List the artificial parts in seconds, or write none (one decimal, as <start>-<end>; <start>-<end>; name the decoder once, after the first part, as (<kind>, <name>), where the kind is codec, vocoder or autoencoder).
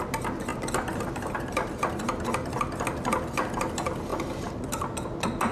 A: none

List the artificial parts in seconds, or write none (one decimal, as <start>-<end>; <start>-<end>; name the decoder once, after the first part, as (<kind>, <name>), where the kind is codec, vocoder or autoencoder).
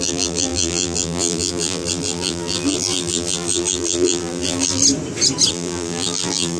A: 0.0-4.8 (vocoder, BigVGAN v2); 5.5-6.6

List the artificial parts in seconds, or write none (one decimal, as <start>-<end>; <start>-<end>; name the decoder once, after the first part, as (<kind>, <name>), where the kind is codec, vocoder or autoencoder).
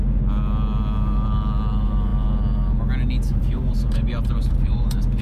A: 3.3-5.2 (vocoder, BigVGAN v2)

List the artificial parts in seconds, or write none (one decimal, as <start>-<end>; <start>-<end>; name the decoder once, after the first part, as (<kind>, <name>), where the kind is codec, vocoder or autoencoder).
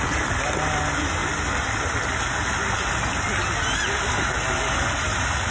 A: none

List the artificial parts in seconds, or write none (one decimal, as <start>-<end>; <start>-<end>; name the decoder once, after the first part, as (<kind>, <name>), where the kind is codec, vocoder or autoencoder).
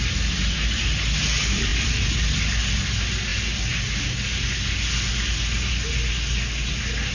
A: none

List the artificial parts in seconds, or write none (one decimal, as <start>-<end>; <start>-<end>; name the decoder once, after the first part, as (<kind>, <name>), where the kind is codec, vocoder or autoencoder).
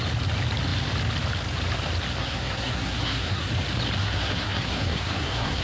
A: 2.2-3.5 (codec, SNAC); 4.0-5.6